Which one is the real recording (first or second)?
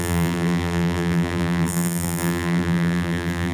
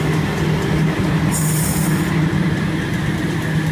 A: second